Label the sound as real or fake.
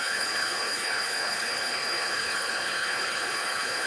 fake